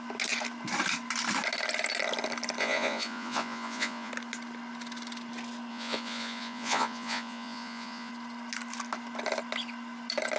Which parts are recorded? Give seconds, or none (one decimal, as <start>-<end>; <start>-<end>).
0.0-2.6; 4.1-5.7; 8.1-10.4

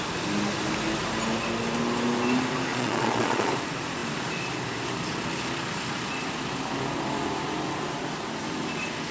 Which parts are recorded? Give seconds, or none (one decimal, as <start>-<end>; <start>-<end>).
0.0-2.7; 3.5-9.1

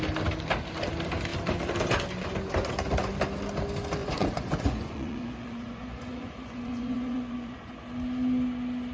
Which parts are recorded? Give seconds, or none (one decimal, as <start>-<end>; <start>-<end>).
0.0-4.0; 7.8-8.9

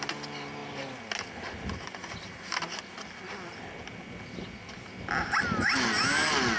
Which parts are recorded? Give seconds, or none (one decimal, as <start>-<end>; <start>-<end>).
0.0-6.6

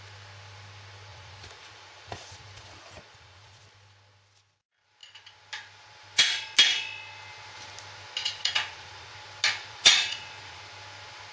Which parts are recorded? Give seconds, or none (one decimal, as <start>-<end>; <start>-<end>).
0.0-1.1; 3.6-8.2; 9.1-9.6; 10.6-11.3

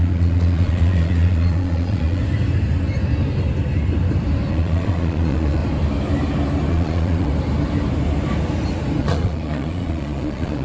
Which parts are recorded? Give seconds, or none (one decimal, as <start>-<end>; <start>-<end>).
2.2-4.5; 5.6-6.7; 7.3-9.0